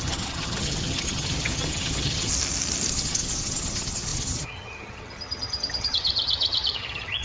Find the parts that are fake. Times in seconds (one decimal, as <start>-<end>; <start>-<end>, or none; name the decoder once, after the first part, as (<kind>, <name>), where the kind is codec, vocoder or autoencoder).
0.0-2.3 (vocoder, HiFi-GAN); 2.9-7.2